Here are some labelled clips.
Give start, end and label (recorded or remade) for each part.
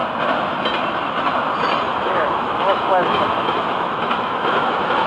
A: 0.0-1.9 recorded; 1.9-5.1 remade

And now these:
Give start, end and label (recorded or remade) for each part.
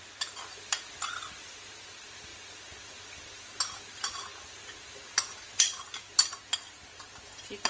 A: 0.0-7.7 recorded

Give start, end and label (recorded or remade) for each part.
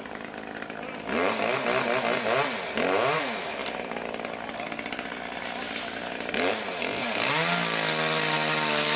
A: 0.0-9.0 recorded